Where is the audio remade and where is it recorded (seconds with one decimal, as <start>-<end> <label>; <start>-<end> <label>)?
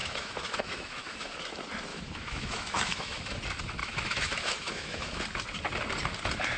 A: 0.0-1.4 remade; 1.4-1.9 recorded; 1.9-3.4 remade; 3.4-3.8 recorded; 3.8-5.2 remade; 5.2-6.6 recorded